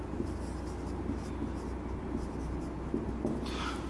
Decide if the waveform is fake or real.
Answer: real